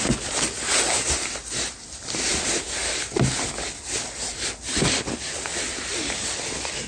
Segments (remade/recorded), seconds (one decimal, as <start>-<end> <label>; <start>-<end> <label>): 0.0-6.9 recorded